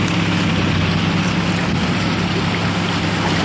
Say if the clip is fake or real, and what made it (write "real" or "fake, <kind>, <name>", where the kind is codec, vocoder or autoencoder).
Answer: real